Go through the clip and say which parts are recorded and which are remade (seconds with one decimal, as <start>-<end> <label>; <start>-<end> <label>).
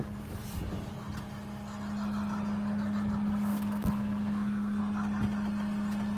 0.0-3.5 recorded; 3.5-4.8 remade; 4.8-6.2 recorded